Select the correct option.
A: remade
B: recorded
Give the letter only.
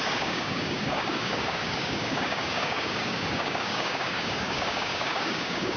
A